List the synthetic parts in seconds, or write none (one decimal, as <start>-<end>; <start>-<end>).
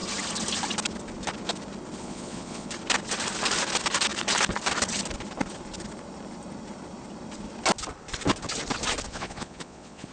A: 2.0-2.7; 9.1-10.1